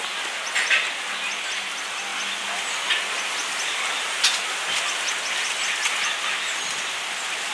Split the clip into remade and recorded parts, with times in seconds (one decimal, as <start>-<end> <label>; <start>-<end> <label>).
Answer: 0.0-7.5 recorded